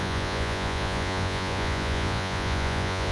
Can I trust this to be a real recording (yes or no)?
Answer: no